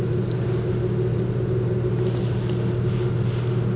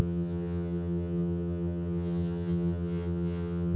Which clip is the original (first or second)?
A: first